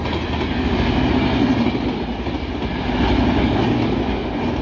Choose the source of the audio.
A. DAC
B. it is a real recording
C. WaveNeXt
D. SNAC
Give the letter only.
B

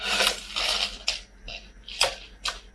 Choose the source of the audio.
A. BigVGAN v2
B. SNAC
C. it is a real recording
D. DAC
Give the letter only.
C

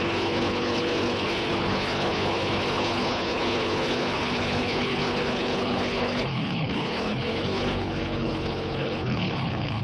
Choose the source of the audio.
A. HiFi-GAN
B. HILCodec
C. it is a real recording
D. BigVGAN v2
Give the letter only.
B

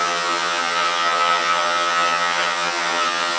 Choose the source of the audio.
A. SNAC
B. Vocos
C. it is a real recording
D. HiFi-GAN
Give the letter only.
D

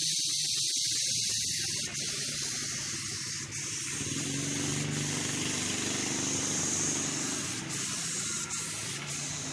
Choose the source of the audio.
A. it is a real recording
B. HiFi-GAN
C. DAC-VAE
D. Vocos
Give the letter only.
A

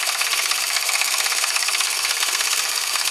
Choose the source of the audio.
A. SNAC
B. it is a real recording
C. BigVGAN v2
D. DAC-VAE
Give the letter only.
A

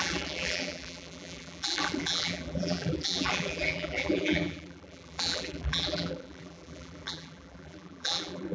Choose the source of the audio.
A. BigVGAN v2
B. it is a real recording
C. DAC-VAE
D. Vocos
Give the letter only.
A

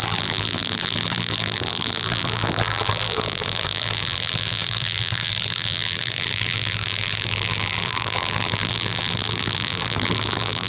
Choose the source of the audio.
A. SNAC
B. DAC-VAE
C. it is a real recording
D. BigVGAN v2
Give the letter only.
D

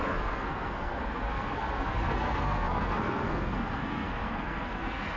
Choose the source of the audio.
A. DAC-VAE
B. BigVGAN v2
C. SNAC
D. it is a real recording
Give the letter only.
C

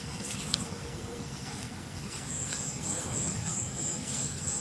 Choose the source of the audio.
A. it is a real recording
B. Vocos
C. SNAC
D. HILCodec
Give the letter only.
C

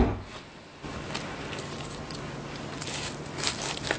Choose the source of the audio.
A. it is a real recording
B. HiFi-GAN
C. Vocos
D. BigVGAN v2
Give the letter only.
A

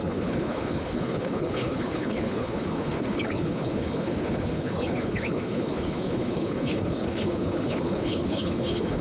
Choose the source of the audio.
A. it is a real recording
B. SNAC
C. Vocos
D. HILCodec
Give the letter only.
D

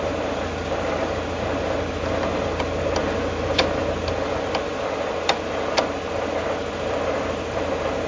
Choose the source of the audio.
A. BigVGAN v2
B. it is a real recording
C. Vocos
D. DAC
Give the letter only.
B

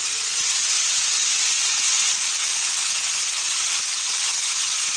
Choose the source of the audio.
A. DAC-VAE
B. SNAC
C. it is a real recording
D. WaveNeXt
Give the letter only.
D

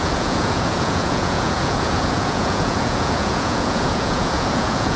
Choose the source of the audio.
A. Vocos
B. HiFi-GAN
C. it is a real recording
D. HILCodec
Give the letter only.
A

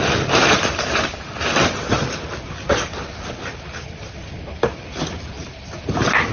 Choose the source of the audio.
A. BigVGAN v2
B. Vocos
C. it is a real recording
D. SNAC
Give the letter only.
A